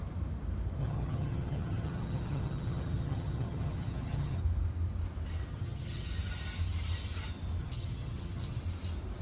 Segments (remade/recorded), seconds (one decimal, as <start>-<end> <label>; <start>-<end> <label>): 0.0-0.8 recorded; 0.8-4.4 remade; 4.4-5.5 recorded; 5.5-6.1 remade; 6.1-7.6 recorded; 7.6-8.6 remade; 8.6-9.2 recorded